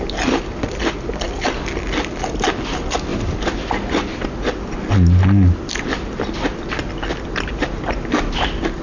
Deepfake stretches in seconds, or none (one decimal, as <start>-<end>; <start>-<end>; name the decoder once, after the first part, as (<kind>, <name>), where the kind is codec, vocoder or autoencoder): none